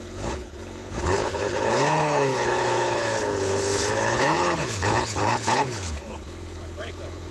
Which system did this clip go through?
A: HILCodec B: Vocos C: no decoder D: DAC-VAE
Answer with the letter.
A